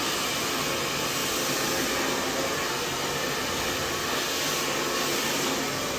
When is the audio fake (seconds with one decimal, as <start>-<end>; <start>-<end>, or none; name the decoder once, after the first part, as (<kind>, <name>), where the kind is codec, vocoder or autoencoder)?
none